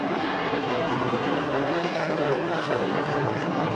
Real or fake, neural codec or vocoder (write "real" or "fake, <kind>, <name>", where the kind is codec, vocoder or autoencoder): fake, codec, SNAC